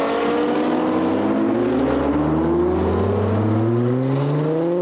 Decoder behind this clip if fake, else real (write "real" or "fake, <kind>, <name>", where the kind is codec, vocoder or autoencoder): real